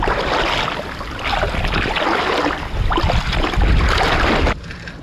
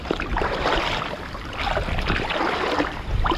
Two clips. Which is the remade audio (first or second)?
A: second